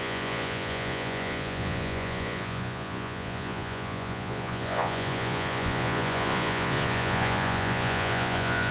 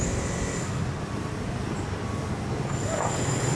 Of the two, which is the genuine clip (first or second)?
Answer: second